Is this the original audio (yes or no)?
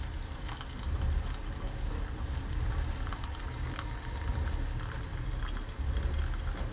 yes